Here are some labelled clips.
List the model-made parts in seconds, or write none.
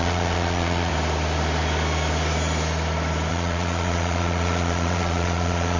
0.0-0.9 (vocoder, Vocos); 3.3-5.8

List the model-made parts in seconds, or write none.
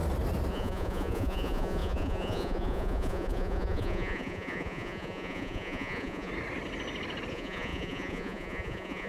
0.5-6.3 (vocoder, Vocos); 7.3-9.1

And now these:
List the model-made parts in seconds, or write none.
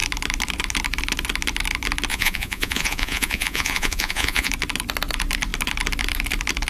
2.1-4.5 (vocoder, Vocos)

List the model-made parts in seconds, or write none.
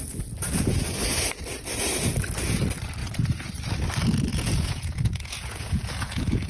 3.0-3.5 (vocoder, Vocos); 4.3-6.5